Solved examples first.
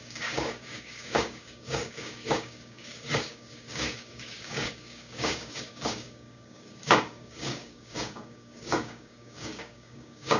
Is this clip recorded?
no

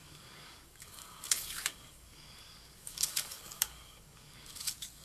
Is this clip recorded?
no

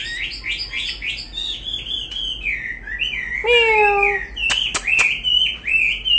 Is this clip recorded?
yes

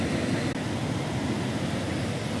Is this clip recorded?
yes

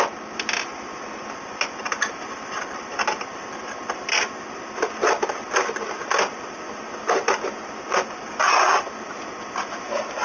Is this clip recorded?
yes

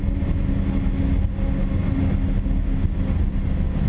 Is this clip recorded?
yes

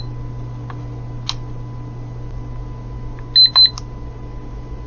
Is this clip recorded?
yes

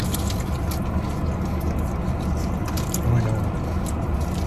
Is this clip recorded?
yes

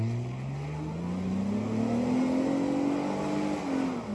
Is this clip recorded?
yes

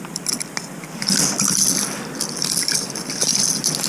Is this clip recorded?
yes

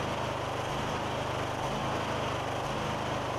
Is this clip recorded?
yes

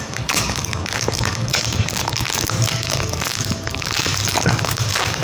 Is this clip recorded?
no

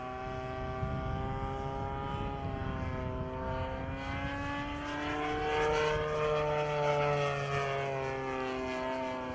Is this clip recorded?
yes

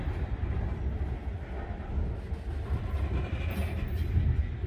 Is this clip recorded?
yes